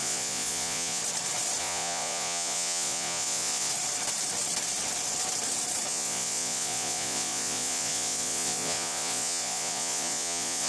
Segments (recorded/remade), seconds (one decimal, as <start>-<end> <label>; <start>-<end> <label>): 0.0-1.0 remade; 1.0-1.6 recorded; 1.6-3.7 remade; 3.7-5.9 recorded; 5.9-10.7 remade